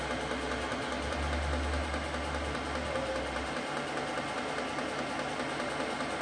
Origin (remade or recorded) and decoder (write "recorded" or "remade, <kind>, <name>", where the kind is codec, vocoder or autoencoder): recorded